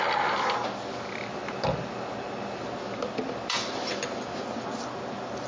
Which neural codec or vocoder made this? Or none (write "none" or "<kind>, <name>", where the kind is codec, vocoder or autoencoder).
none